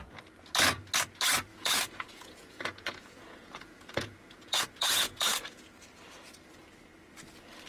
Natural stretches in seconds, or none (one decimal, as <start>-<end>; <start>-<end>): 0.0-1.5; 5.6-7.7